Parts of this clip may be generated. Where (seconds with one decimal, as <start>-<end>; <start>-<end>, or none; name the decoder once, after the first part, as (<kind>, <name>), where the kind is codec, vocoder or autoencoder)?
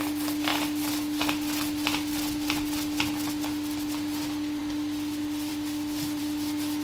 none